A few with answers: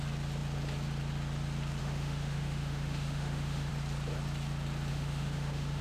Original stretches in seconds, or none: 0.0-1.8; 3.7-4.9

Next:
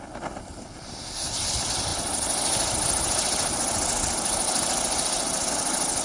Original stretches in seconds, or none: 0.0-6.0

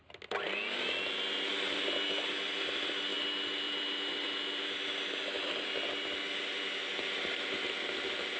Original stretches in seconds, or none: 0.0-8.4

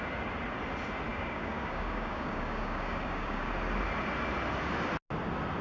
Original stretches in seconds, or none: 0.0-1.1; 3.5-5.6